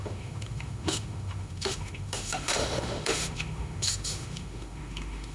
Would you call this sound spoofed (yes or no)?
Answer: yes